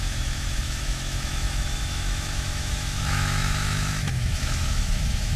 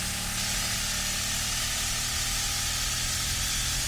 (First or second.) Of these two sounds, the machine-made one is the first